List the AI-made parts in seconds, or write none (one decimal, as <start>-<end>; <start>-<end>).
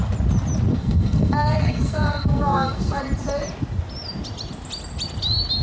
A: 0.7-3.0